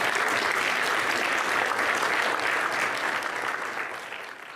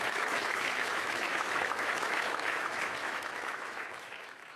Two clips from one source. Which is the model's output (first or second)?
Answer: second